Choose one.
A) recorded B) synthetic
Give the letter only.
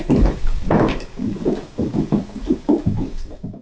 B